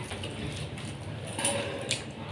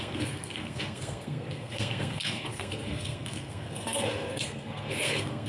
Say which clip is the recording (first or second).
first